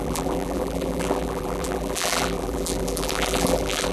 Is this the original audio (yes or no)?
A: no